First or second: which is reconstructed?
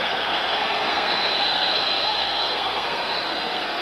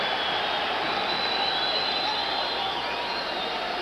first